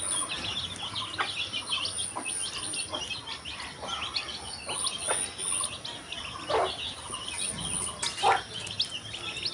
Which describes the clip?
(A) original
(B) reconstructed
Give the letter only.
A